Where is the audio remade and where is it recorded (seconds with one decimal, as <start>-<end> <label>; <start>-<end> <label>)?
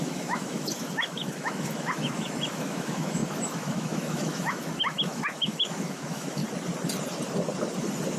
0.0-6.4 remade; 6.4-8.2 recorded